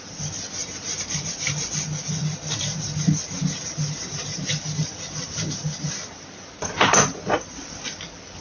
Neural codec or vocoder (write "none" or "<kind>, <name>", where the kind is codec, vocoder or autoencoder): vocoder, BigVGAN v2